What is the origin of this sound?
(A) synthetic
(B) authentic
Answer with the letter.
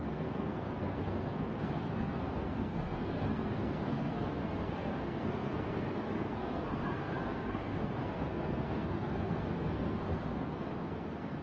A